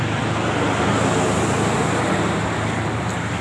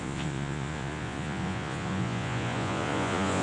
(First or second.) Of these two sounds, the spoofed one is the second